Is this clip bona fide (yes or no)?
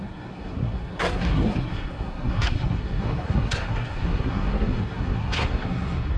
no